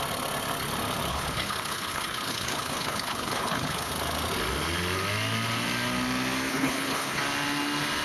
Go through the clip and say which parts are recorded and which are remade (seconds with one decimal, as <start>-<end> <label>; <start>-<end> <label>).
0.0-1.1 recorded; 1.1-3.9 remade; 3.9-6.5 recorded; 6.5-7.2 remade; 7.2-8.0 recorded